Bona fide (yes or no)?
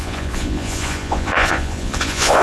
no